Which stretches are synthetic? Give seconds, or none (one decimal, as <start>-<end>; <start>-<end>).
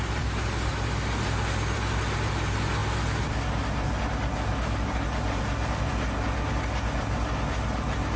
none